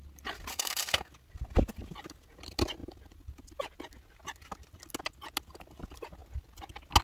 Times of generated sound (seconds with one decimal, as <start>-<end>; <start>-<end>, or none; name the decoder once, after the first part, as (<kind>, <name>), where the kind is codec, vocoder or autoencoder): 0.5-1.1 (codec, SNAC)